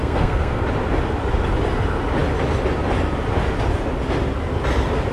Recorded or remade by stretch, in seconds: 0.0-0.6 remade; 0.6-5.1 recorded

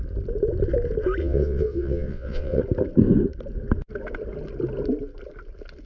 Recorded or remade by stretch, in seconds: 0.0-1.2 recorded; 1.2-2.6 remade; 2.6-5.9 recorded

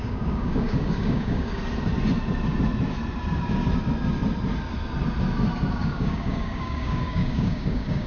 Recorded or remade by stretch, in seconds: 0.0-1.6 remade; 1.6-5.7 recorded; 5.7-8.1 remade